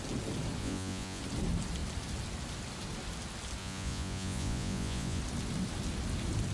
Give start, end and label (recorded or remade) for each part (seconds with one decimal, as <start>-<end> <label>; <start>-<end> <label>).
0.0-0.6 recorded; 0.6-1.2 remade; 1.2-3.6 recorded; 3.6-5.2 remade; 5.2-6.5 recorded